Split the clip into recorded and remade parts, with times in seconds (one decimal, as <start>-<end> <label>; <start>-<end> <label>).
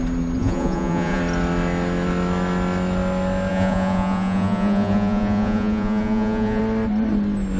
0.0-0.4 recorded; 0.4-1.2 remade; 1.2-3.5 recorded; 3.5-6.6 remade; 6.6-7.6 recorded